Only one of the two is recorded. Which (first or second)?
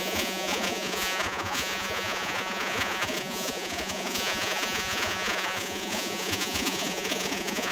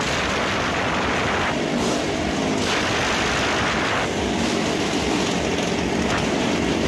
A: second